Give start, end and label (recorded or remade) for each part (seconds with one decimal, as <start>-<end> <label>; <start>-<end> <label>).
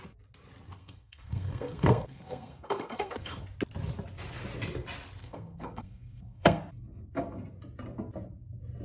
0.0-0.8 recorded; 0.8-3.4 remade; 3.4-5.2 recorded; 5.2-6.6 remade; 6.6-8.8 recorded